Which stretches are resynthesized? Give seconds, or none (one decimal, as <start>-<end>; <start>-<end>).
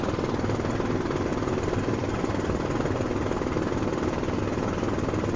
1.3-4.4